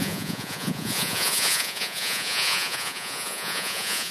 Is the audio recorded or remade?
remade